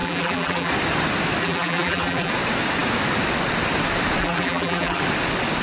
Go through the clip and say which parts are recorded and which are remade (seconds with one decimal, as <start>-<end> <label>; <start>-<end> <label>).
0.0-0.7 remade; 0.7-1.4 recorded; 1.4-2.3 remade; 2.3-4.2 recorded; 4.2-5.0 remade; 5.0-5.6 recorded